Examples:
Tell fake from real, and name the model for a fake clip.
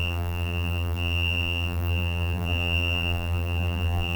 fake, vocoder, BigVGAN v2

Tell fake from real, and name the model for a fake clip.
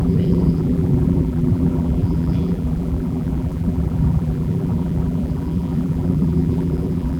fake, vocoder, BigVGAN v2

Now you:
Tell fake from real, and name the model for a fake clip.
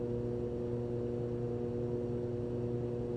real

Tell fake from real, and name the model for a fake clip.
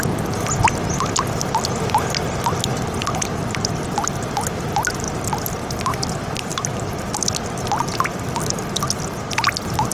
real